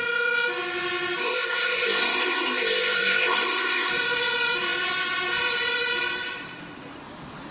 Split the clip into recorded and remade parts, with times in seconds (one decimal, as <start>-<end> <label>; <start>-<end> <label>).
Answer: 0.0-1.2 recorded; 1.2-3.9 remade; 3.9-7.5 recorded